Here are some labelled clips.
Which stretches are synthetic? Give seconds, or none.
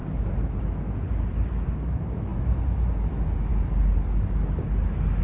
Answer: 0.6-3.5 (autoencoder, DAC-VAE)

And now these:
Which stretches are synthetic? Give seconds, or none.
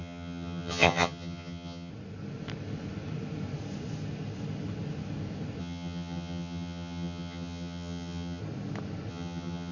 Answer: 0.0-1.9 (vocoder, HiFi-GAN); 5.6-8.4; 9.1-9.7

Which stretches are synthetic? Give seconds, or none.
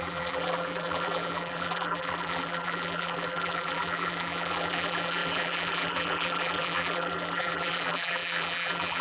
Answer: 0.0-9.0 (vocoder, BigVGAN v2)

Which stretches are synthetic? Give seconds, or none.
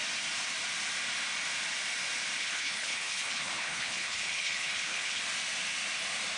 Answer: 2.4-5.2 (codec, HILCodec)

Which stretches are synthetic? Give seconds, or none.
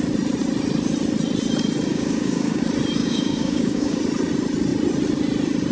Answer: 1.9-2.6 (codec, DAC); 3.0-4.0